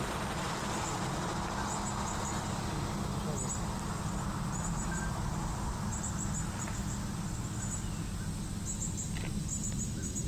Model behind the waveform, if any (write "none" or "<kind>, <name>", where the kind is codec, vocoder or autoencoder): none